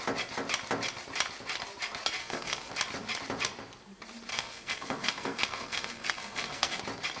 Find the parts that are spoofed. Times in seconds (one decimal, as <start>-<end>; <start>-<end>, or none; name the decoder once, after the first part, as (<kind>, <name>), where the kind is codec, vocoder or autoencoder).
2.2-2.7 (codec, SNAC); 4.3-6.8